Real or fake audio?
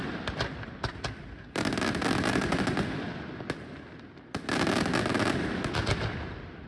real